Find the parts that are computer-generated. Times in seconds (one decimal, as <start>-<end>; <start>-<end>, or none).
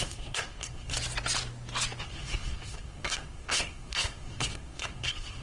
0.0-0.9; 2.0-5.4